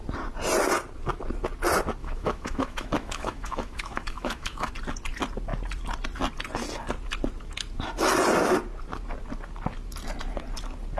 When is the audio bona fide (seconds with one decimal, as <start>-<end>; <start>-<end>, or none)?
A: 0.0-2.0; 4.7-11.0